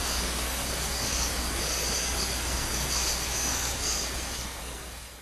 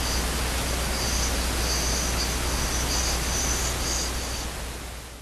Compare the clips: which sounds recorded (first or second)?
second